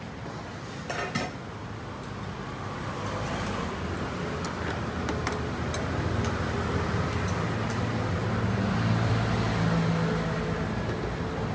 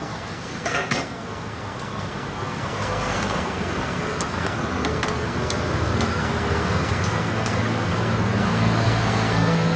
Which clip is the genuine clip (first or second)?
first